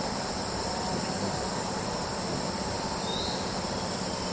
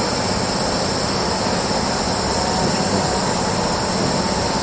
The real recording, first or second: second